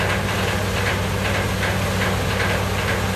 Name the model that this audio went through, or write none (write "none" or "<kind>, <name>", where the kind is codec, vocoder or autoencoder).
none